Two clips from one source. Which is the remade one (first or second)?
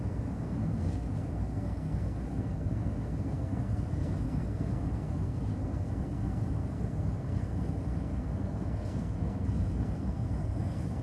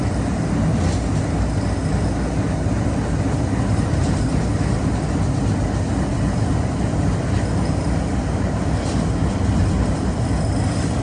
first